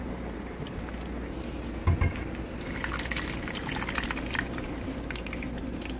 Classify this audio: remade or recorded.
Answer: recorded